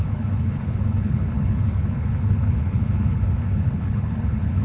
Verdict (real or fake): fake